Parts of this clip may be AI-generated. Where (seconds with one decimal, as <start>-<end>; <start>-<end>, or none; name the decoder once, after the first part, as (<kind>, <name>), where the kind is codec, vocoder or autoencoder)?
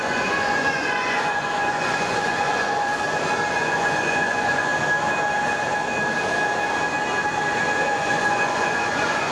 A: 0.0-2.9 (vocoder, Vocos); 3.5-4.7; 7.9-9.3